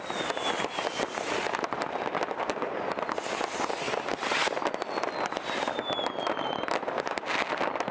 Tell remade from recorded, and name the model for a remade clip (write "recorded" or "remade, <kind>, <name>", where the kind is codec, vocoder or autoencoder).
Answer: recorded